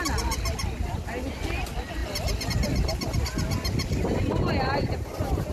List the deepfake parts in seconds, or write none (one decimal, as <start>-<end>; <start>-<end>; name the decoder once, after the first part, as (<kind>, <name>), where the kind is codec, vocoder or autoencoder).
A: none

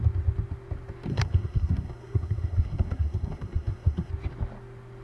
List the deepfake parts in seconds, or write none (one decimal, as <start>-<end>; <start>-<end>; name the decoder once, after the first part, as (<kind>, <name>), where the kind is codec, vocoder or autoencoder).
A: 1.1-4.1 (codec, SNAC)

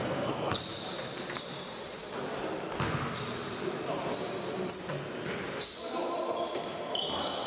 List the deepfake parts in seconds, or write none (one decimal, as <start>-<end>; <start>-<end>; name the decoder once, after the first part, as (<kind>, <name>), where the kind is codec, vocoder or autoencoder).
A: 0.0-0.5 (codec, SNAC)

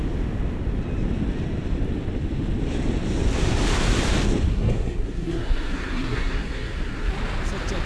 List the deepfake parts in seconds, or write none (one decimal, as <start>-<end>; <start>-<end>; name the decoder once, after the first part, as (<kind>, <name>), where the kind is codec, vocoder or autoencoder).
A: 4.5-7.1 (codec, SNAC)